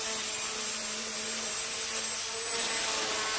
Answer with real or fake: real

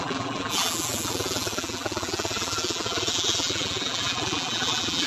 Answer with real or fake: fake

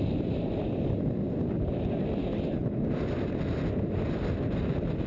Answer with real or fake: real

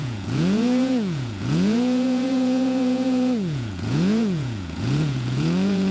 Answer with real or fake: fake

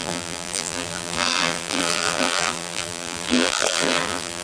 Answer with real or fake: fake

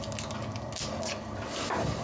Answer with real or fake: real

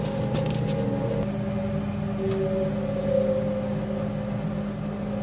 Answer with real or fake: real